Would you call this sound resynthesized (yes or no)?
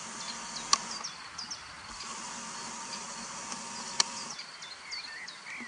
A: no